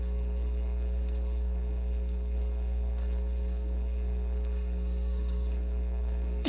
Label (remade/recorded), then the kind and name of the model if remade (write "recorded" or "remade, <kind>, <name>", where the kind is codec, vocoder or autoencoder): remade, codec, SNAC